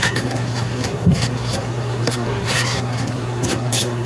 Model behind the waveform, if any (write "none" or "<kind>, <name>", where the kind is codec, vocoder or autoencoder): codec, SNAC